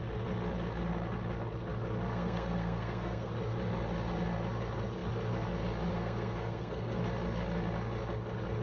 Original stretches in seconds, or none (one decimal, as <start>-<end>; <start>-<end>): 0.0-2.1; 3.3-5.9; 7.0-8.6